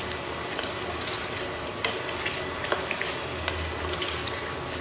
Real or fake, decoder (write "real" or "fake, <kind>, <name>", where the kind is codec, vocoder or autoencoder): real